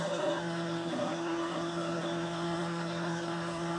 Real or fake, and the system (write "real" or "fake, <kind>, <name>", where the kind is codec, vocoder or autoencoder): fake, codec, SNAC